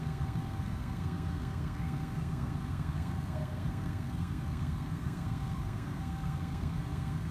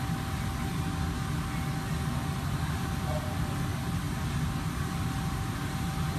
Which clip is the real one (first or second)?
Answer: second